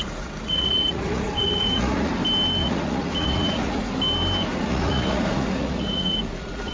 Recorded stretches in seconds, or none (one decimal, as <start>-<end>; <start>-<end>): 2.1-2.6; 3.9-4.5